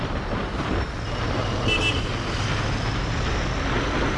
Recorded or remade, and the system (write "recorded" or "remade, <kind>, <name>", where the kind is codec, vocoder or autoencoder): recorded